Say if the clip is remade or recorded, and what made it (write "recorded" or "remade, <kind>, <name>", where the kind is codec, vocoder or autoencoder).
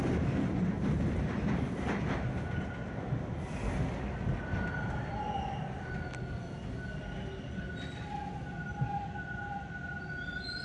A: recorded